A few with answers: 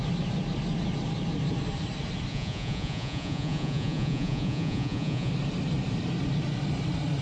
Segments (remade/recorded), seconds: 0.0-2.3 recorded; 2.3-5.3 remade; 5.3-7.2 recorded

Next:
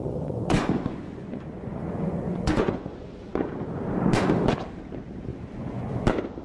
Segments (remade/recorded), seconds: 0.0-3.8 remade; 3.8-5.3 recorded; 5.3-6.0 remade; 6.0-6.4 recorded

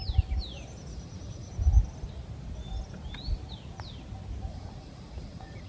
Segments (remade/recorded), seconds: 0.0-0.9 recorded; 0.9-1.5 remade; 1.5-4.5 recorded; 4.5-5.7 remade

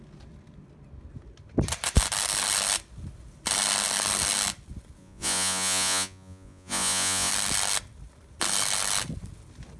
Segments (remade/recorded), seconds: 0.0-5.0 recorded; 5.0-7.3 remade; 7.3-9.8 recorded